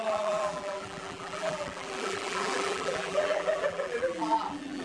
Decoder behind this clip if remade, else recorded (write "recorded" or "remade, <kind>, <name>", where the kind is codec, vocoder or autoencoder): remade, vocoder, BigVGAN v2